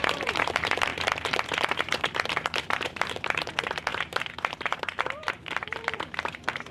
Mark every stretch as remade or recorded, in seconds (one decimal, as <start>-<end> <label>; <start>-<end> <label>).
0.0-0.9 remade; 0.9-1.6 recorded; 1.6-6.7 remade